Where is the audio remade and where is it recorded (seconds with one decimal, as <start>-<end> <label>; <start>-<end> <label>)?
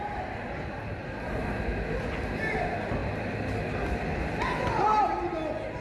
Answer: 0.0-1.0 recorded; 1.0-1.6 remade; 1.6-5.8 recorded